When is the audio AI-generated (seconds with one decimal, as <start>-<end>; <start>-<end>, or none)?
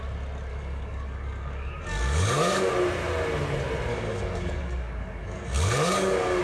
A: 0.5-2.7; 3.9-6.4